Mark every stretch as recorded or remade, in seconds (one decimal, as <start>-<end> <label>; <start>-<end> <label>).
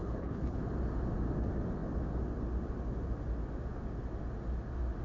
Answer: 0.0-0.6 remade; 0.6-5.0 recorded